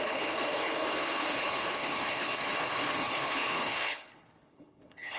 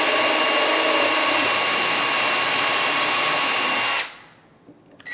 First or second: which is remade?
first